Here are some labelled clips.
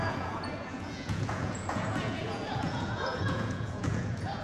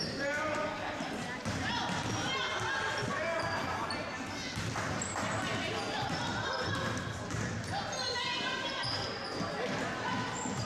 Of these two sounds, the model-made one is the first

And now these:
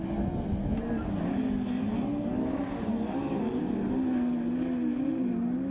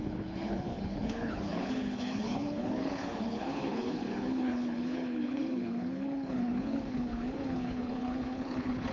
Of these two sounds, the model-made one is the second